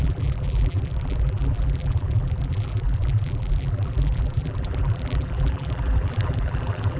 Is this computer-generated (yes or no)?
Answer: yes